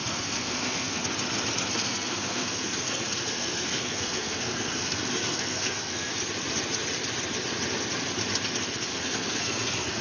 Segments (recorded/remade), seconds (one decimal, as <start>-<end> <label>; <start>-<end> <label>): 0.0-1.0 remade; 1.0-1.7 recorded; 1.7-6.1 remade; 6.1-8.9 recorded; 8.9-10.0 remade